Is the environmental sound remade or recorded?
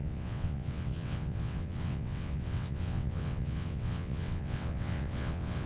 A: remade